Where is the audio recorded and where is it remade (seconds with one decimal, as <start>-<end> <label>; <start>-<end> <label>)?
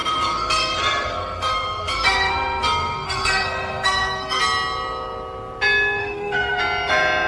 0.0-4.4 remade; 4.4-6.0 recorded; 6.0-6.6 remade; 6.6-7.3 recorded